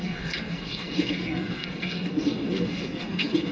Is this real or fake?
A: fake